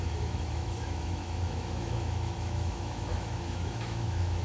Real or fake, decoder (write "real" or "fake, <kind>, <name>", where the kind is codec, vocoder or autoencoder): fake, autoencoder, DAC-VAE